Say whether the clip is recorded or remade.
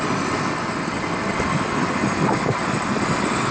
recorded